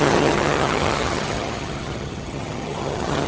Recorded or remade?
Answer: remade